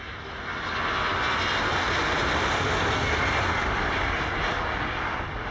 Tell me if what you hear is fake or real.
real